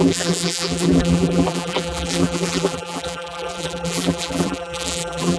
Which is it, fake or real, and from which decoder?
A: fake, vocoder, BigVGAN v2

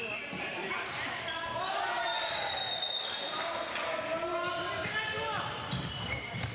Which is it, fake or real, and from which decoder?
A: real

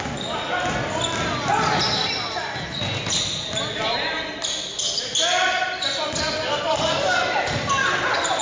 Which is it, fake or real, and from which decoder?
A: real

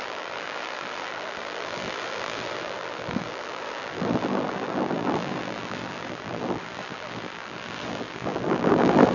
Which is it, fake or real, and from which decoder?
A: fake, vocoder, BigVGAN v2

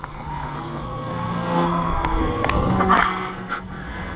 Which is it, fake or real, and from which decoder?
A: fake, codec, SNAC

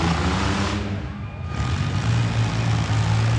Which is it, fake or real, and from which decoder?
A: real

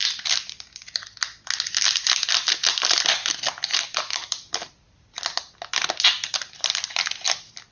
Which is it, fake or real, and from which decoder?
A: real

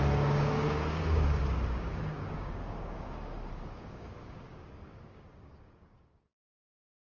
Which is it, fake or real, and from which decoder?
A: fake, codec, DAC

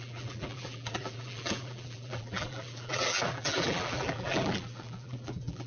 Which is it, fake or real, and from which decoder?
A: fake, vocoder, BigVGAN v2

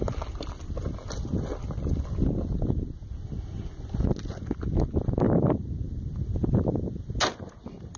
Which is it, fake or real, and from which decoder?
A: real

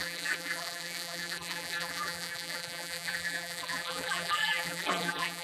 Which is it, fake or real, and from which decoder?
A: fake, vocoder, BigVGAN v2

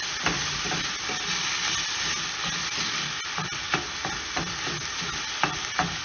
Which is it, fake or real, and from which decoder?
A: real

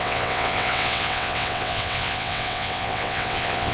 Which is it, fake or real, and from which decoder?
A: fake, vocoder, WaveNeXt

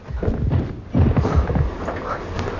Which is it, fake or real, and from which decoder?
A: real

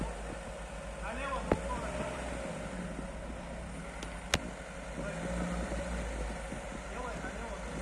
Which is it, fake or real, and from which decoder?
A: real